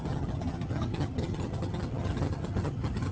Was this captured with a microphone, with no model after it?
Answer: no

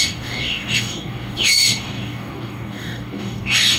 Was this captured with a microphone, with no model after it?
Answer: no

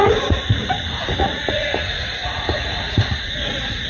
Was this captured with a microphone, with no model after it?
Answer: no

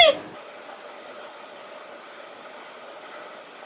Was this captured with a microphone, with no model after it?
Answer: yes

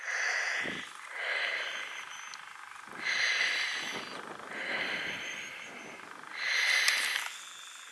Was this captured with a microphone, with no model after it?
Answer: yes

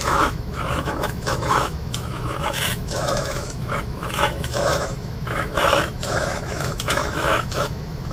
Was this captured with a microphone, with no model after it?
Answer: no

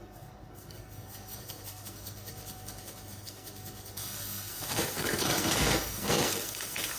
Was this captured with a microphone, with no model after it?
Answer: no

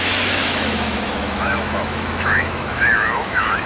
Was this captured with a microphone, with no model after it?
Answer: no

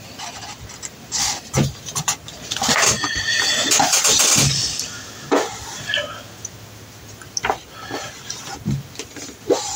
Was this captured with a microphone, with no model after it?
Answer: yes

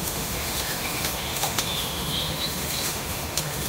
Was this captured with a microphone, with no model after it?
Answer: no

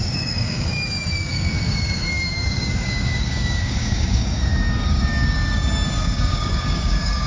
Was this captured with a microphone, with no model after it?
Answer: no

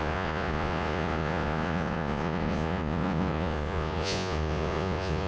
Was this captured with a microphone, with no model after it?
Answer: no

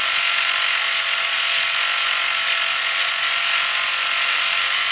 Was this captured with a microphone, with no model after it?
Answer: yes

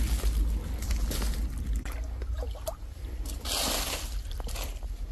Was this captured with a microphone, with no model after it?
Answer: yes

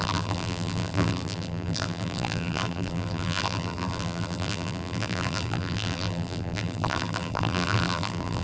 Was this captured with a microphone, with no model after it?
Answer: no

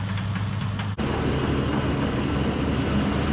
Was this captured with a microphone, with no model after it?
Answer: yes